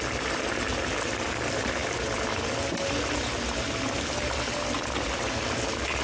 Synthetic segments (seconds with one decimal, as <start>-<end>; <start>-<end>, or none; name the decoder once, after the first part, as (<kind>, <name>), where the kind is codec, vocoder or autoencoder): none

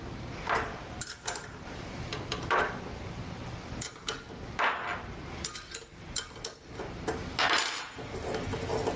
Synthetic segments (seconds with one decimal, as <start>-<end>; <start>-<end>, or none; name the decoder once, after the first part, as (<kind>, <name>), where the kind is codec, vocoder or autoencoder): 0.7-2.1 (vocoder, BigVGAN v2)

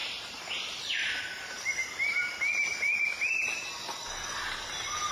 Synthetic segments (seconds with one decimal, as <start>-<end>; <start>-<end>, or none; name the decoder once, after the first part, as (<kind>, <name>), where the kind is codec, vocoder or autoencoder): none

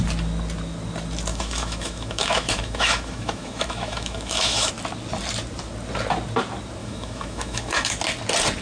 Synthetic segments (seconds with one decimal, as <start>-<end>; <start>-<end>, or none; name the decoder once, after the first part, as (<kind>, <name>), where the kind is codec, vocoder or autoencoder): 1.3-4.7 (autoencoder, DAC-VAE); 6.8-7.9

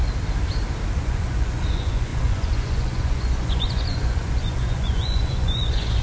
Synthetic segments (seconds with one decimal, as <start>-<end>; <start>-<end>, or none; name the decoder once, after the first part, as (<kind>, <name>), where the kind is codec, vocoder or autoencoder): 1.0-6.0 (vocoder, Vocos)

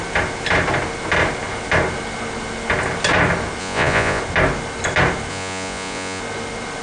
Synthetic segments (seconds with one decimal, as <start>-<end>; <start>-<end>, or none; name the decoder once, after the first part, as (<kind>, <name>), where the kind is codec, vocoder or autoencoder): 3.6-4.2 (vocoder, Vocos); 5.3-6.2

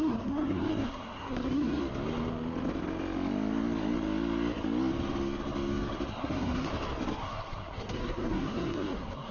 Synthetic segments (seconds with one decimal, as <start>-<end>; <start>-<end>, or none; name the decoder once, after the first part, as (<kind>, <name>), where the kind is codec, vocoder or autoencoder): 0.0-1.8 (codec, SNAC); 6.1-6.7; 7.2-9.3